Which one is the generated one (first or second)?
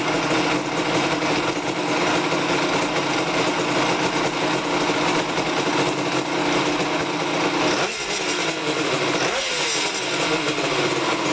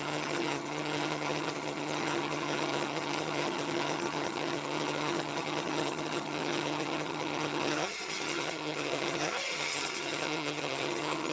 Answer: second